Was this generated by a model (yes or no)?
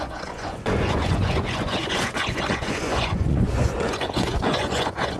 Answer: yes